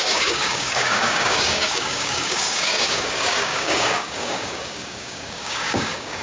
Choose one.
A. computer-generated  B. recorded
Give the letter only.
A